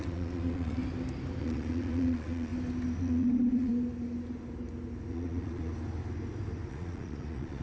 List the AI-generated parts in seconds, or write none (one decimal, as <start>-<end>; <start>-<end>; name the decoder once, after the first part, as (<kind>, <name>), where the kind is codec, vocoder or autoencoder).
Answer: 0.0-0.8 (vocoder, Vocos); 1.4-2.5; 3.0-3.7; 5.1-5.7; 6.7-7.6